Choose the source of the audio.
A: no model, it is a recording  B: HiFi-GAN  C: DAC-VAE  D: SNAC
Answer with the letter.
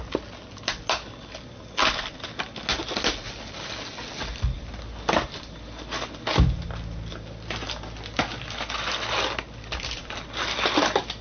A